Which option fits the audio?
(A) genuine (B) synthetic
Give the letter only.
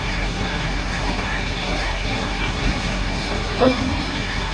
B